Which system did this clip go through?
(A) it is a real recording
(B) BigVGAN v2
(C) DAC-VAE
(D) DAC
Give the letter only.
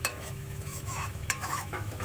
C